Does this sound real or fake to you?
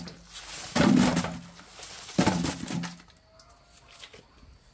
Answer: real